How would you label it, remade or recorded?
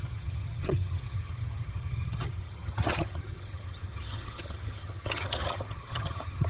remade